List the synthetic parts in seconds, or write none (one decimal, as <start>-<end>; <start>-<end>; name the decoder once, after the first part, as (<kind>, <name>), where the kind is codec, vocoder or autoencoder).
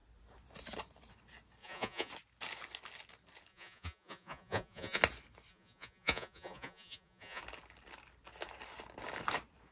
1.6-2.1 (vocoder, Vocos); 3.5-5.0; 5.5-7.4